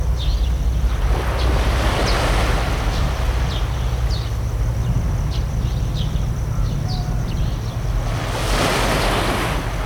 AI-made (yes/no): no